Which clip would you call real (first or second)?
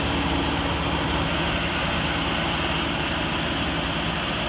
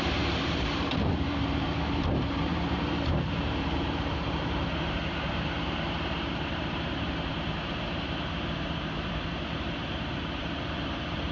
first